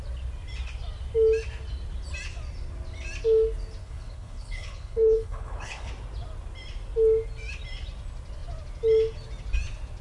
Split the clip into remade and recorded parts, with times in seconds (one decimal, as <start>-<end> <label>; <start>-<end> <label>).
0.0-3.8 recorded; 3.8-5.9 remade; 5.9-10.0 recorded